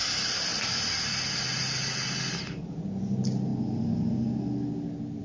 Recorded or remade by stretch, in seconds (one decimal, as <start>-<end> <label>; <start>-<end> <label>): 0.0-5.2 recorded